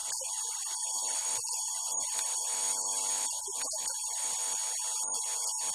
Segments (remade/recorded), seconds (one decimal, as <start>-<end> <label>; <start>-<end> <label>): 0.0-4.6 remade; 4.6-5.7 recorded

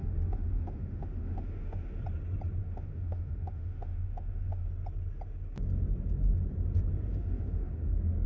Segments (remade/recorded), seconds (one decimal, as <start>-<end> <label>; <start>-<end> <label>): 0.0-2.0 remade; 2.0-2.6 recorded; 2.6-4.7 remade; 4.7-7.1 recorded; 7.1-7.7 remade; 7.7-8.3 recorded

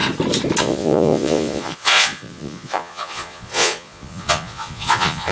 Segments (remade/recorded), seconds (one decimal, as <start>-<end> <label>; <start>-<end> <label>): 0.0-0.6 recorded; 0.6-5.3 remade

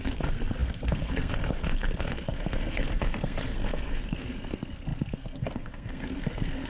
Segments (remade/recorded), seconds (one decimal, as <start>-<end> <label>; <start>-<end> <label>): 0.0-6.7 remade

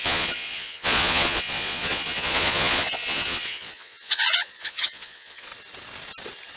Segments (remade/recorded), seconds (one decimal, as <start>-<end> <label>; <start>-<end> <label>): 0.0-5.5 remade; 5.5-6.6 recorded

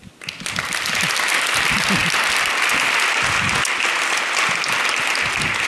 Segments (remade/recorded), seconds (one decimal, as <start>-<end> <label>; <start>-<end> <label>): 0.0-5.7 recorded

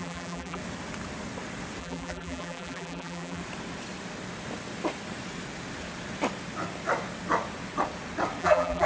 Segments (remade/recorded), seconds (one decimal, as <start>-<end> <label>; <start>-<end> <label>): 0.0-0.6 remade; 0.6-1.8 recorded; 1.8-3.4 remade; 3.4-8.4 recorded; 8.4-8.9 remade

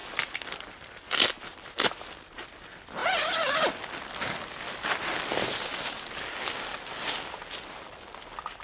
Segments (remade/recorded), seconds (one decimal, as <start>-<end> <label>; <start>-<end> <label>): 0.0-8.6 recorded